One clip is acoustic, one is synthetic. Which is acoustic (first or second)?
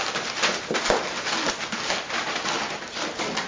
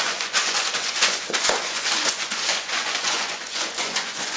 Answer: first